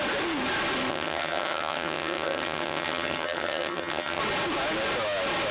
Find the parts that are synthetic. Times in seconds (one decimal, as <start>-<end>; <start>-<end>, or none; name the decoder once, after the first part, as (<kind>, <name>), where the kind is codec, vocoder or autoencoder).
0.9-4.2 (vocoder, HiFi-GAN)